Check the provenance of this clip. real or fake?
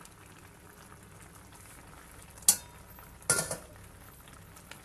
real